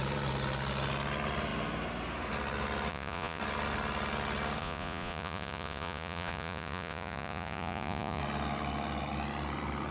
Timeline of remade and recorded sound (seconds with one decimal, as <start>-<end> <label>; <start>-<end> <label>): 0.0-2.9 recorded; 2.9-3.4 remade; 3.4-4.6 recorded; 4.6-8.2 remade; 8.2-9.9 recorded

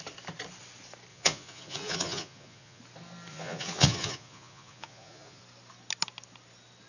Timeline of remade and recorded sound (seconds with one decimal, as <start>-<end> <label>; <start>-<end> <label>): 0.0-1.1 recorded; 1.1-2.8 remade; 2.8-3.3 recorded; 3.3-5.4 remade; 5.4-6.9 recorded